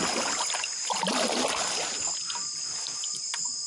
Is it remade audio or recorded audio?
recorded